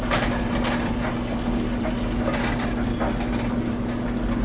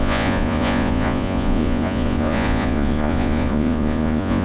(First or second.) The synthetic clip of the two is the second